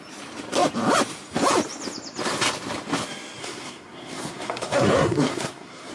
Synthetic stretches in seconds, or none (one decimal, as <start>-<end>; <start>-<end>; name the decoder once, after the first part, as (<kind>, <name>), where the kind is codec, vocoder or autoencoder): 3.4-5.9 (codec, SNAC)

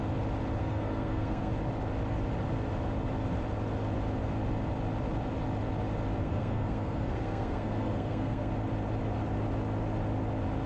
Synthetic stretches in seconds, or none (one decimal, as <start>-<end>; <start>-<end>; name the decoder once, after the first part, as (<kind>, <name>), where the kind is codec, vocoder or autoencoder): 0.6-1.5 (codec, SNAC); 6.2-8.5

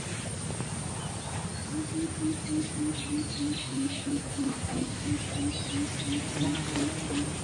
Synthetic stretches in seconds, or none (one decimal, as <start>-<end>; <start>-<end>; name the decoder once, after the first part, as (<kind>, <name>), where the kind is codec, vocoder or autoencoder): 3.6-5.1 (codec, SNAC)